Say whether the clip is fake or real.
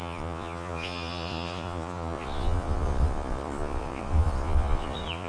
fake